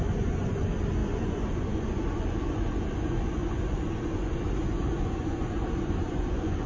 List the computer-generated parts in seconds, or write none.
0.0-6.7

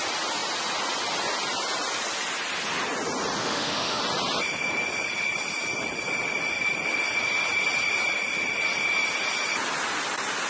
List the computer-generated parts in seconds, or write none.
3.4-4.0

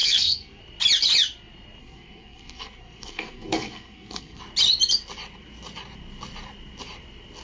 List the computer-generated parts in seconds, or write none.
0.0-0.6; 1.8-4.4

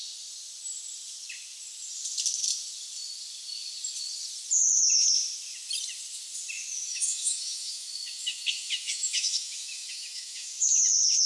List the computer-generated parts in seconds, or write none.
6.9-10.8

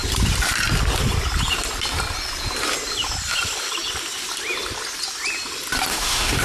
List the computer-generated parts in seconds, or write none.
5.9-6.4